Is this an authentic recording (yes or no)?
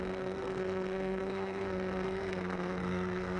no